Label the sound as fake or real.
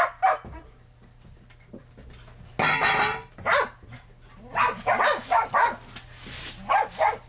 real